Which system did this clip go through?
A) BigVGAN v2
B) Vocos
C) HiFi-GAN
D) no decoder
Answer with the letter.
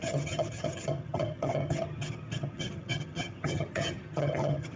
C